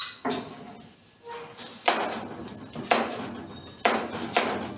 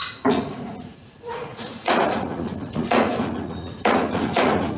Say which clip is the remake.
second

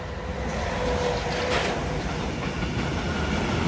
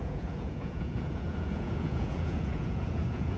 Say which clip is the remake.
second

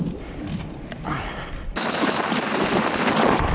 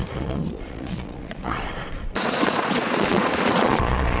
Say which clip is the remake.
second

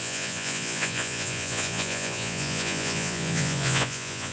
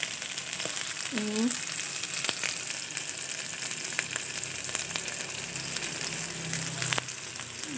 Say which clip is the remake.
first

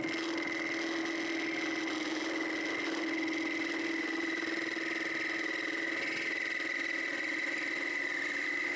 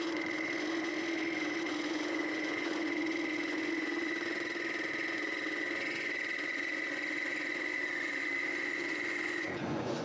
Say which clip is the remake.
second